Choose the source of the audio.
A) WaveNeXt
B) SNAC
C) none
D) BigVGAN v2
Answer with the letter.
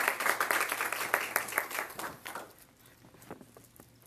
C